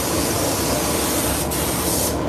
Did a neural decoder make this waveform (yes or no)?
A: no